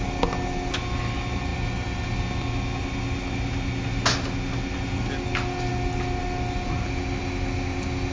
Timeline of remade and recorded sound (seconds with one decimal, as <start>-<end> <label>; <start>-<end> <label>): 0.0-8.1 recorded